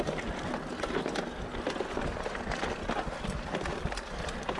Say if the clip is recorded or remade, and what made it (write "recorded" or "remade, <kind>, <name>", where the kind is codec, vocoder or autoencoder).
recorded